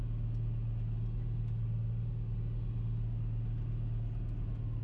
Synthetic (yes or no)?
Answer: no